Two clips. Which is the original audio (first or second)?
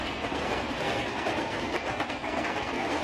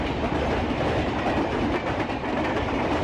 second